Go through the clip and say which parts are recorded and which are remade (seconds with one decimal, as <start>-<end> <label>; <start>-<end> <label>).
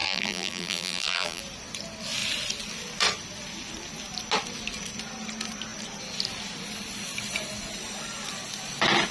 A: 0.0-1.4 remade; 1.4-9.1 recorded